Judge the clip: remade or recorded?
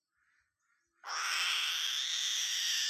recorded